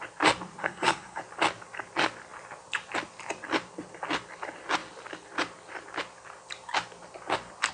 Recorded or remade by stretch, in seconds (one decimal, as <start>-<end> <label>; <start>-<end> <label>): 0.0-0.6 recorded; 0.6-1.2 remade; 1.2-7.7 recorded